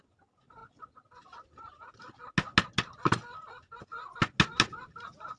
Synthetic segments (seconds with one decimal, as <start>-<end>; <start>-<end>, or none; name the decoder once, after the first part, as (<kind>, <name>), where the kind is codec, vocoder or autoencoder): none